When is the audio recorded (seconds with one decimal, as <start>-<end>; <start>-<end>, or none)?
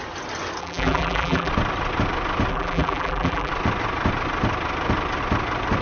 0.0-0.6; 1.5-2.5; 3.5-5.8